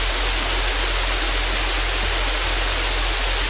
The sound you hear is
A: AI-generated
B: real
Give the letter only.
B